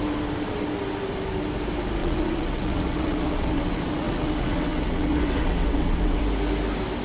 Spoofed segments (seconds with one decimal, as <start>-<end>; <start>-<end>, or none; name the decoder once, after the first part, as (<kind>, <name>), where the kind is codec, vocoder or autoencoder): 2.0-6.2 (vocoder, WaveNeXt)